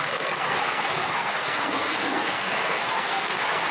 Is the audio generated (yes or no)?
yes